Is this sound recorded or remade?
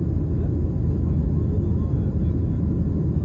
recorded